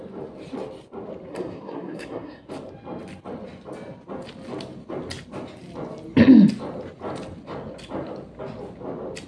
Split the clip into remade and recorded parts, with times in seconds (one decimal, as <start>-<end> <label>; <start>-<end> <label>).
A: 0.0-1.3 recorded; 1.3-2.5 remade; 2.5-9.3 recorded